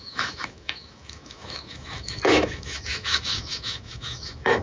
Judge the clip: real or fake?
fake